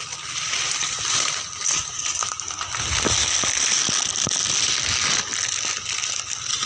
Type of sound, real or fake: real